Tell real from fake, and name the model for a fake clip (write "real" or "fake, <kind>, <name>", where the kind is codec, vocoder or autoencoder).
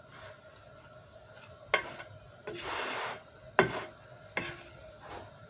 real